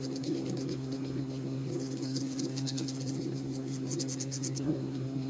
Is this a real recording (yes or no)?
no